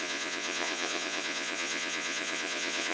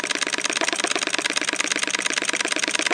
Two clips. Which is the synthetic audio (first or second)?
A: first